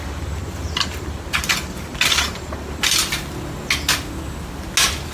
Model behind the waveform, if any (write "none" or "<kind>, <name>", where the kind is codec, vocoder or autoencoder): none